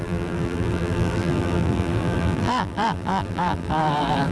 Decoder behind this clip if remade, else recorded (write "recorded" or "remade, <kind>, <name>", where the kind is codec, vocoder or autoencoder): remade, vocoder, BigVGAN v2